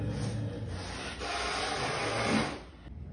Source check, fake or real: real